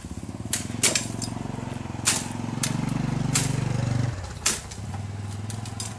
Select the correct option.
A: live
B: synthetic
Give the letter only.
A